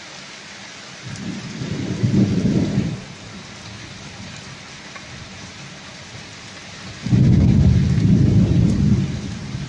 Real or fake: real